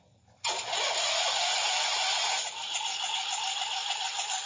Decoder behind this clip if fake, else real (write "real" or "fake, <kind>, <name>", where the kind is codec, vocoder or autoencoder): real